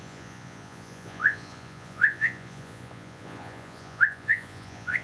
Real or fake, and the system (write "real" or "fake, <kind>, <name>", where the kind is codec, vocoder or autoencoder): fake, vocoder, Vocos